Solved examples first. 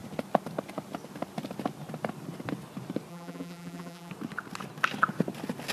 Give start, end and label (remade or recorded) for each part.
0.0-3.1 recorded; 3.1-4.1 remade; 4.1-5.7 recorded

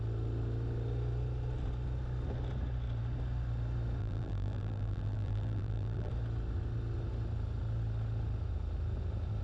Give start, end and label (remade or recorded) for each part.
0.0-4.0 recorded; 4.0-6.1 remade; 6.1-9.4 recorded